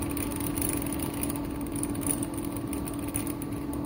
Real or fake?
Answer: real